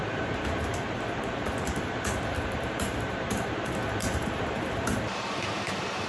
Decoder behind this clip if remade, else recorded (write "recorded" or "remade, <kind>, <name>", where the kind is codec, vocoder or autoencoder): remade, vocoder, BigVGAN v2